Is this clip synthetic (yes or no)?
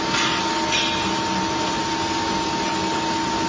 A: no